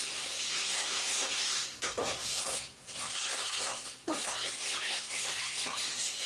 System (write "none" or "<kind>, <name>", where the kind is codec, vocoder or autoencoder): codec, SNAC